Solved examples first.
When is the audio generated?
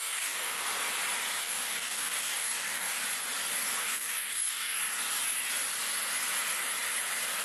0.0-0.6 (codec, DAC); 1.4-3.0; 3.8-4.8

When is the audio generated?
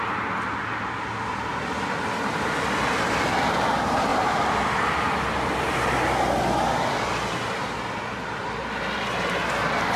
none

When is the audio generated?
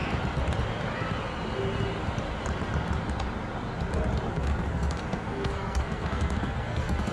4.3-7.1 (codec, SNAC)